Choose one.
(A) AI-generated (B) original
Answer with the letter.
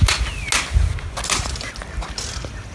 B